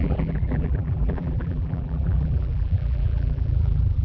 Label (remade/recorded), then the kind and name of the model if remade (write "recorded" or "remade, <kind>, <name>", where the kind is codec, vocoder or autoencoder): remade, vocoder, BigVGAN v2